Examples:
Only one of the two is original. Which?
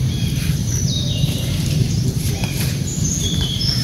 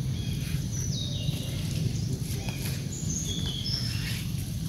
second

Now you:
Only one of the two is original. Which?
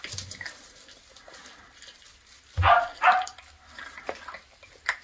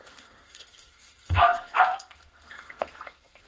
first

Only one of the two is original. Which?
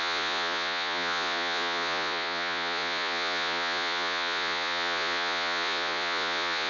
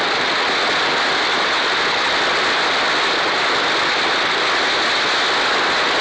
second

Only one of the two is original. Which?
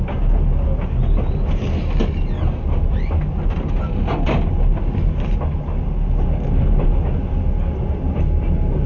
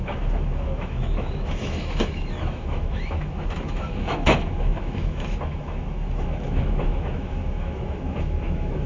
first